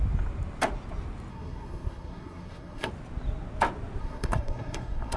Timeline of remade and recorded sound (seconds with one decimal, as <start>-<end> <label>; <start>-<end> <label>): 0.0-1.3 recorded; 1.3-2.9 remade; 2.9-4.0 recorded; 4.0-5.2 remade